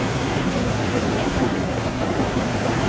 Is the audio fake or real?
fake